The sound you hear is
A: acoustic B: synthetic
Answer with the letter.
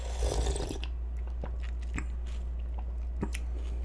A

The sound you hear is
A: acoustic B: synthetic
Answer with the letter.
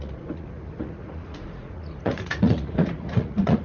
B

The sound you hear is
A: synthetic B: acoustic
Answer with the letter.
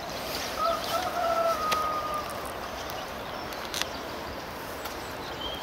A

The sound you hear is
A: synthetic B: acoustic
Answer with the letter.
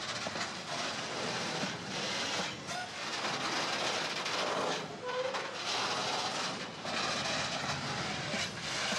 B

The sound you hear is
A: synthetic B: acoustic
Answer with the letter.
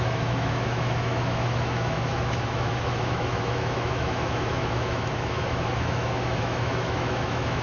A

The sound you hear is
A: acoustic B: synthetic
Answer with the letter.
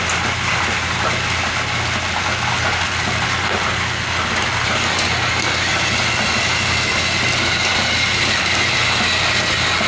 A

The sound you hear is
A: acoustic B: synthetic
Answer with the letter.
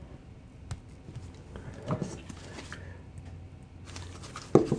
A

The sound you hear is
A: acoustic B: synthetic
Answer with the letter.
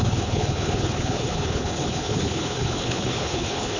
B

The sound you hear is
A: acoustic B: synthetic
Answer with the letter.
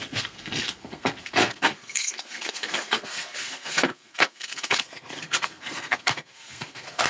B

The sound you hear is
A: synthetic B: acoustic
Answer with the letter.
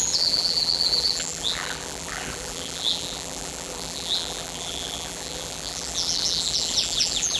A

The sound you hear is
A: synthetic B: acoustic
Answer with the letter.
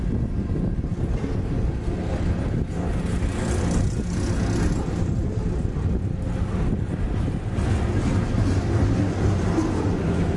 B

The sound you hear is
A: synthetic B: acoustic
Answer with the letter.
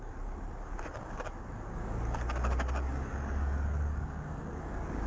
A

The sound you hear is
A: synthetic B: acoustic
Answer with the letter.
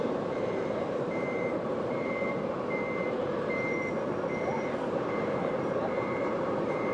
A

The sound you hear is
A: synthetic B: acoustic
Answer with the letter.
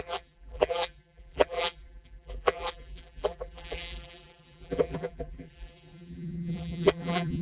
A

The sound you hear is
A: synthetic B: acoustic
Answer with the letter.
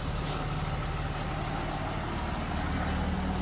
B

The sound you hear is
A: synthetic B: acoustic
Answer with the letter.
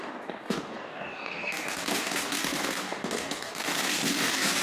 A